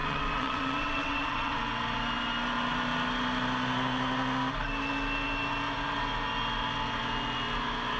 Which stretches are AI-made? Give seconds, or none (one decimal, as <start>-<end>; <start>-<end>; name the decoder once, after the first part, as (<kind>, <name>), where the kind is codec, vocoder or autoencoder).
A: 0.0-1.6 (vocoder, WaveNeXt)